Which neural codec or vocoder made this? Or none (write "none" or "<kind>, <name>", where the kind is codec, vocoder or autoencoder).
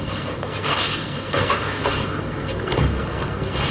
codec, SNAC